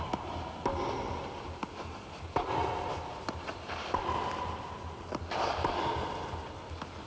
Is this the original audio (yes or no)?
yes